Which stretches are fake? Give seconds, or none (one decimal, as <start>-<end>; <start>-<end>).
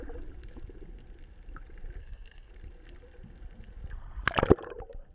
2.0-2.5